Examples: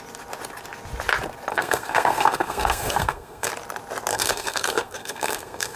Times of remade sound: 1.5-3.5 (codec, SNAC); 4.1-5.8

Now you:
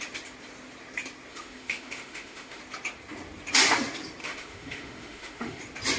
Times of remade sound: 1.3-2.6 (autoencoder, DAC-VAE); 4.2-5.6